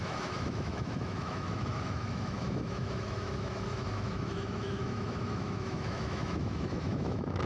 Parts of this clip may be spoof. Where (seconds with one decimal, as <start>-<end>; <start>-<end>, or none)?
0.0-7.5